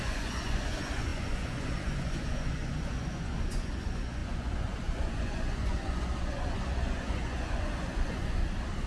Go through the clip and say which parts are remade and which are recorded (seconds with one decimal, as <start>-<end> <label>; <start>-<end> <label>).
0.0-8.4 remade; 8.4-8.9 recorded